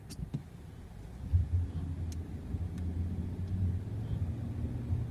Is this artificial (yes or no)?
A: no